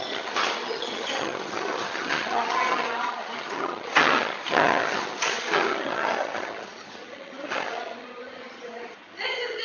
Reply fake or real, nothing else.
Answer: fake